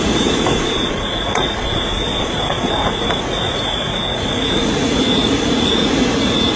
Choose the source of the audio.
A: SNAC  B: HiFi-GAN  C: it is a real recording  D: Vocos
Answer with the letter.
D